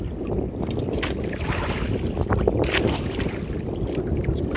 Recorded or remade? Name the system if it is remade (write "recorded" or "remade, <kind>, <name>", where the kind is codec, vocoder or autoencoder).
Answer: recorded